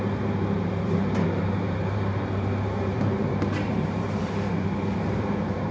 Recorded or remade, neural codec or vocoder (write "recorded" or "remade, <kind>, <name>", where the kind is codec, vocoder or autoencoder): remade, vocoder, BigVGAN v2